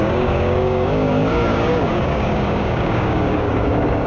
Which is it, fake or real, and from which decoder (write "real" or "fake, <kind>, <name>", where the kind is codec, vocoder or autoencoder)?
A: fake, codec, DAC